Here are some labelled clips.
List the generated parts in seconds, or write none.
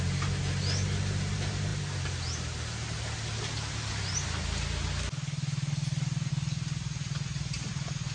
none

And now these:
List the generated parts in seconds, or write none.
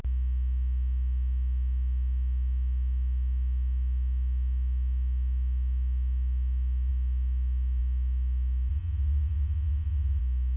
8.7-10.2 (vocoder, WaveNeXt)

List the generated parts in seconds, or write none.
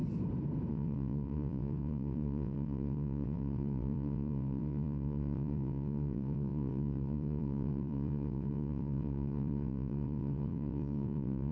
0.7-11.5 (vocoder, WaveNeXt)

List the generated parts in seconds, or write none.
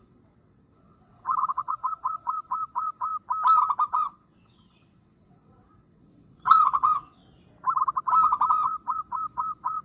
0.0-3.1 (vocoder, WaveNeXt); 3.9-7.2; 8.5-9.8